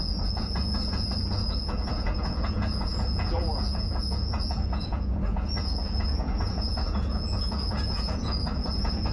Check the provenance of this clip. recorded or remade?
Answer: remade